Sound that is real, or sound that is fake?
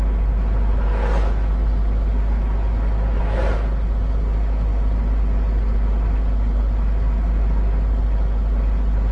real